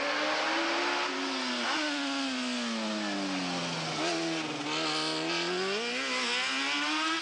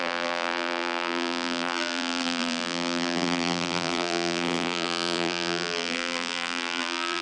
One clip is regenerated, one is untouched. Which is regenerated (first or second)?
second